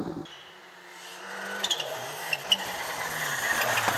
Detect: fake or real real